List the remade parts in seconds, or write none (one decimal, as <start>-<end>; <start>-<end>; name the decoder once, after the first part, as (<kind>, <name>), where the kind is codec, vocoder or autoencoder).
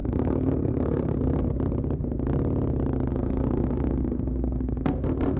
0.0-1.5 (codec, SNAC); 3.1-5.4